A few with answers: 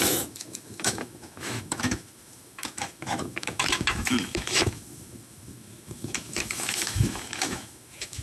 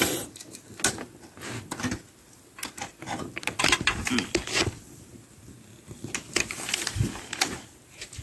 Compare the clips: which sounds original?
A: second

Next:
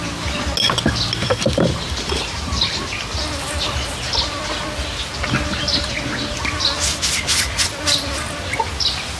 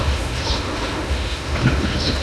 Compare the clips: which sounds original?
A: first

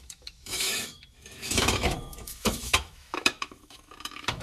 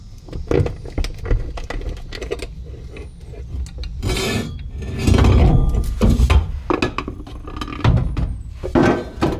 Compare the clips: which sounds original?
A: second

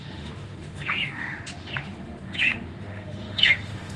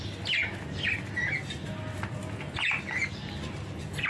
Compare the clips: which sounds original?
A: second